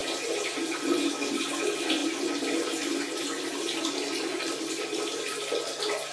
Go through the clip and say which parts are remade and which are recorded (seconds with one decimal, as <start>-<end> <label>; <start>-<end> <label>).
0.0-6.1 recorded